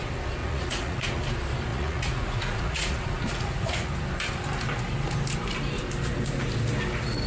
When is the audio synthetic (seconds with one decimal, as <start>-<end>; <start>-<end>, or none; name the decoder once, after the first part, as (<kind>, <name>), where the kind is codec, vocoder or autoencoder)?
0.4-1.2 (vocoder, Vocos); 1.7-3.9